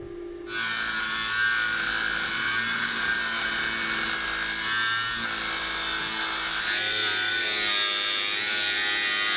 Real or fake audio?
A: real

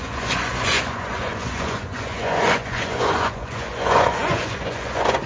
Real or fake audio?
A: fake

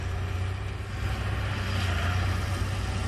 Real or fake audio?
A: real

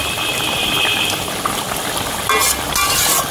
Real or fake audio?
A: real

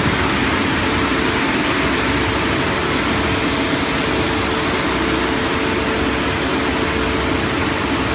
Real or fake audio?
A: real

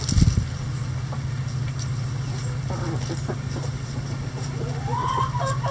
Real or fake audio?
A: real